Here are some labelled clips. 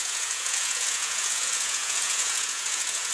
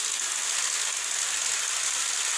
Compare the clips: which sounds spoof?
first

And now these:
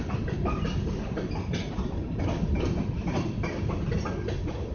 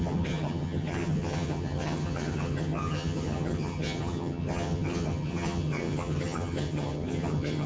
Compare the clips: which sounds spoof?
second